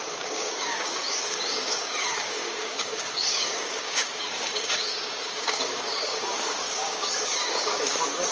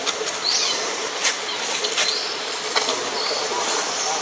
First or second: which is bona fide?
second